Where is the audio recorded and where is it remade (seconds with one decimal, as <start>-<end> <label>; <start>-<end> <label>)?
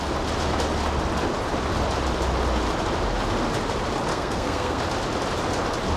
0.0-4.1 recorded; 4.1-4.8 remade; 4.8-6.0 recorded